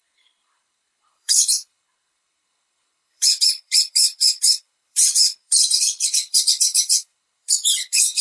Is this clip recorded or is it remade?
remade